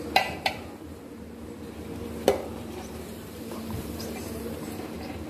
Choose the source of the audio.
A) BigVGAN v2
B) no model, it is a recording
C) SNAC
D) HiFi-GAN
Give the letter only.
A